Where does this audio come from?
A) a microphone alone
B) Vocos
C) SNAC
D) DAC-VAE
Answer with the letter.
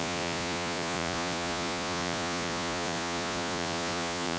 B